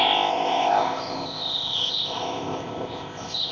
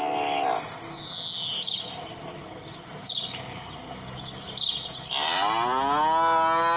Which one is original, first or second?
second